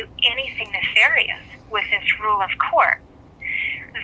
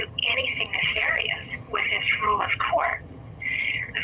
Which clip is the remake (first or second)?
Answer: second